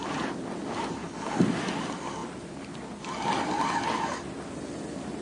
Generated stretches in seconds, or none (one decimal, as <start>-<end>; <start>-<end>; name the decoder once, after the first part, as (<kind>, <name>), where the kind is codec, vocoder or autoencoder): none